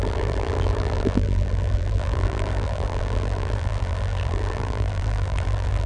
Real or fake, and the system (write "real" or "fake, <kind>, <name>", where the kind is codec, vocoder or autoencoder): fake, vocoder, BigVGAN v2